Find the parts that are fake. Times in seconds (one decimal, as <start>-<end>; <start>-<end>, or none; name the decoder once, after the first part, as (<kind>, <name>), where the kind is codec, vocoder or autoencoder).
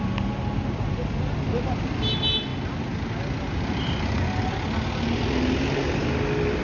none